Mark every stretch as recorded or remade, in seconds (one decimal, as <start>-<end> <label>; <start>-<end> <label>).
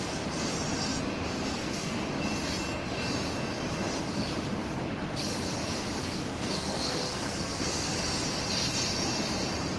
0.0-1.5 recorded; 1.5-2.1 remade; 2.1-6.0 recorded; 6.0-8.0 remade; 8.0-9.8 recorded